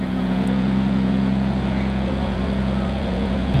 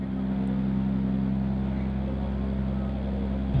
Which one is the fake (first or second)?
first